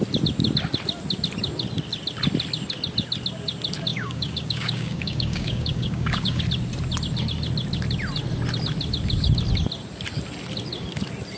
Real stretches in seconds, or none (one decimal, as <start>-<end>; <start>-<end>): 0.0-3.9; 6.4-11.4

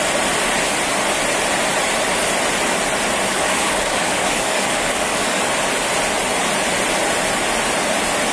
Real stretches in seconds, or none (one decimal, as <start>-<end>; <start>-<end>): 0.0-3.3; 5.4-8.3